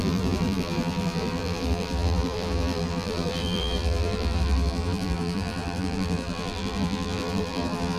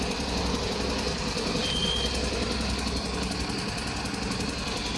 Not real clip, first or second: first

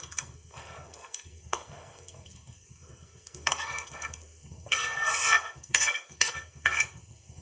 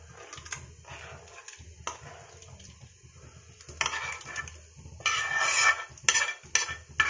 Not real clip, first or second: first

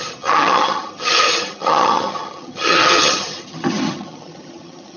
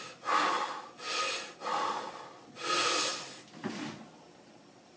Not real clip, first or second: first